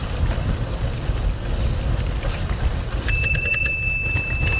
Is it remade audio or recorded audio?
recorded